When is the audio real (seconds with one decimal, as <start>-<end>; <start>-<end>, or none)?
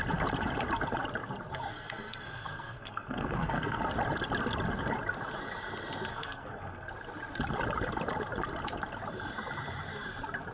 0.0-1.7; 3.8-6.1; 6.9-10.5